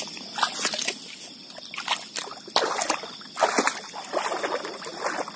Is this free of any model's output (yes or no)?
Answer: yes